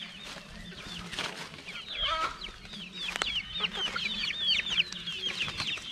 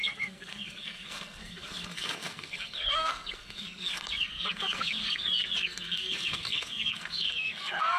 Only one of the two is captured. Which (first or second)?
first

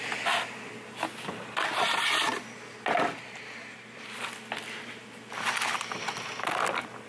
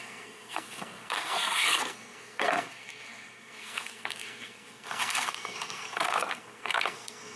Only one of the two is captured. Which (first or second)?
first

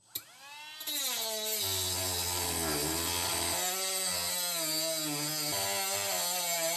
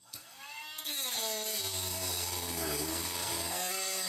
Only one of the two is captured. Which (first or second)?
first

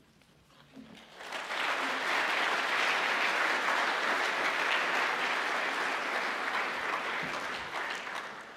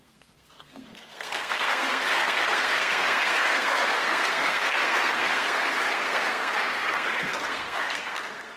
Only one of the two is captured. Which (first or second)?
first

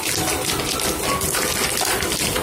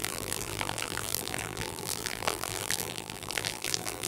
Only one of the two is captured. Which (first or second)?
first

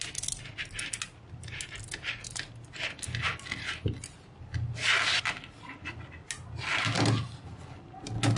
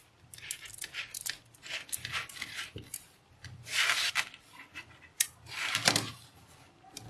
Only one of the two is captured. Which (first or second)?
first